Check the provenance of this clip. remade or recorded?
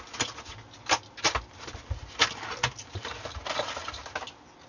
recorded